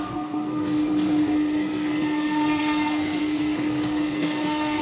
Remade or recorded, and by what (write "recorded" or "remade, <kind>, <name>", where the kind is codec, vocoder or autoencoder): remade, codec, SNAC